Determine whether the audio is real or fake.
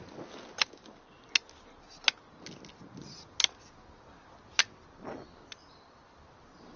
real